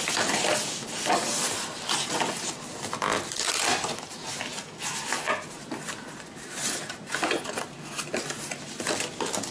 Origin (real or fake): real